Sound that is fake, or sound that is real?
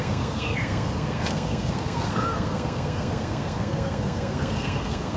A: fake